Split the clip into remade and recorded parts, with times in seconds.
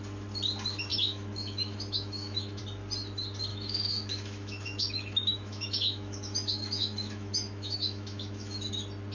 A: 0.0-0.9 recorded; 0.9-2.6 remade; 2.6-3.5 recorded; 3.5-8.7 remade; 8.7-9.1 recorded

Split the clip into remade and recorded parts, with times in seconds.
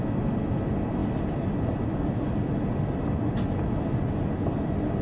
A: 0.0-5.0 recorded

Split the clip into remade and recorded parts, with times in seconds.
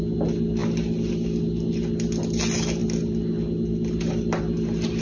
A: 0.0-5.0 recorded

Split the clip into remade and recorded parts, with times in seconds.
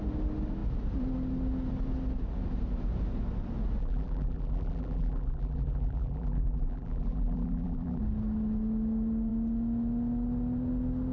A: 0.0-3.8 recorded; 3.8-8.0 remade; 8.0-11.1 recorded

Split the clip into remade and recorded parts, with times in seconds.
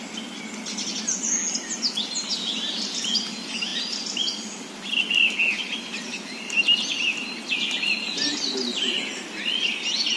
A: 0.0-10.2 recorded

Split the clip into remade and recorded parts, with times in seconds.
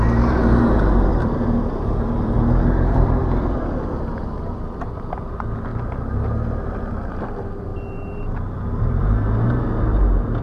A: 0.0-1.1 recorded; 1.1-5.3 remade; 5.3-10.4 recorded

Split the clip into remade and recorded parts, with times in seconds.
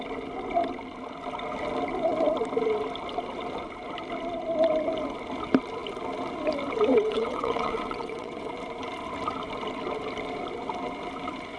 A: 0.0-6.9 recorded; 6.9-8.5 remade; 8.5-11.6 recorded